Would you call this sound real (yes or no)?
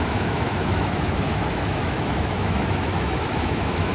no